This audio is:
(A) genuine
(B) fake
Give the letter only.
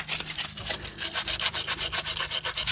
A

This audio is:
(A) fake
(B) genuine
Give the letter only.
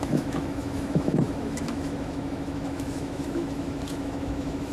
A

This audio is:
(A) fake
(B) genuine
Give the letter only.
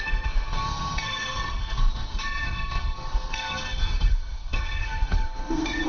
A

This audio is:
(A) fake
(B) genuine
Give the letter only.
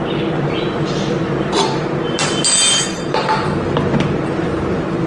B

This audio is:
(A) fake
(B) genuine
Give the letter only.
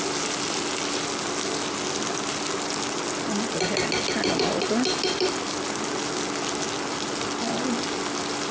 B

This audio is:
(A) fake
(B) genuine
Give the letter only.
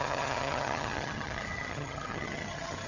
A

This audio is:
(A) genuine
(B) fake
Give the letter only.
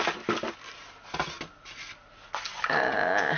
A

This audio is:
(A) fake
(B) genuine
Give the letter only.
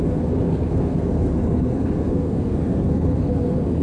A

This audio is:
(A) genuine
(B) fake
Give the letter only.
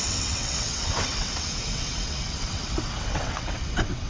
B